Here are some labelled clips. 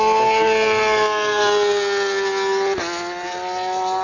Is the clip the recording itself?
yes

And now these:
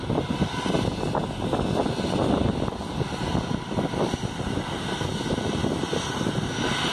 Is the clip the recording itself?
yes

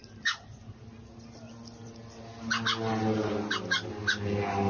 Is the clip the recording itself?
yes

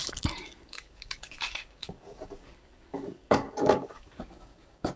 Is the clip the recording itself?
no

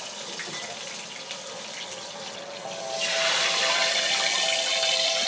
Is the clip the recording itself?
yes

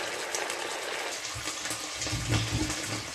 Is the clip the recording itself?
yes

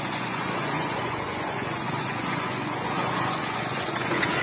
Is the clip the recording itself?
no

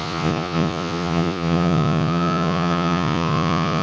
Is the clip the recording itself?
no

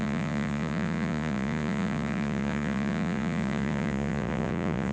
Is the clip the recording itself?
no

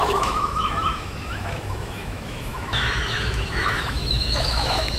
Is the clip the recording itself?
no